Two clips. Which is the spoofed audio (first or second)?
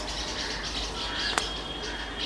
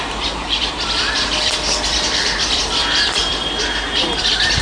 second